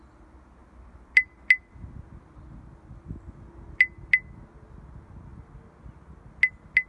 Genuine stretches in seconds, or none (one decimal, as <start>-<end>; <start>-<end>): 0.0-6.9